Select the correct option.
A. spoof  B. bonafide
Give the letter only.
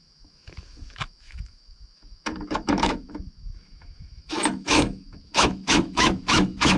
A